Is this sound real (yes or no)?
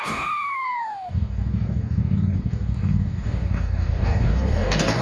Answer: no